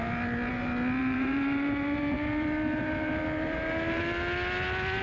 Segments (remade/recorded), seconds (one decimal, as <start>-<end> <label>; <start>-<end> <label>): 0.0-1.0 recorded; 1.0-4.0 remade; 4.0-5.0 recorded